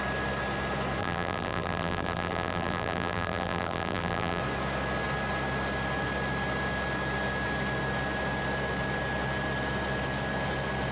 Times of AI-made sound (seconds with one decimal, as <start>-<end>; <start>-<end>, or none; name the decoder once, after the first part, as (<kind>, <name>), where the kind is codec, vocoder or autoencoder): 1.0-4.4 (vocoder, BigVGAN v2)